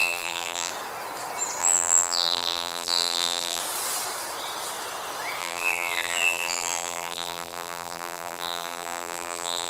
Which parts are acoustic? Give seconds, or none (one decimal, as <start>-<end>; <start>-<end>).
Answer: 0.7-1.6; 3.6-5.4